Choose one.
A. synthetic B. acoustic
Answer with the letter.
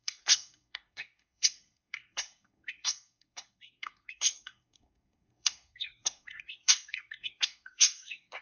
A